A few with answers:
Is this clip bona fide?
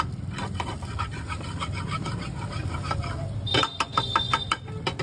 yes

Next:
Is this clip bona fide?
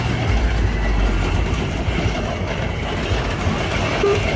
yes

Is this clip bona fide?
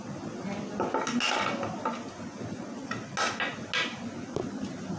yes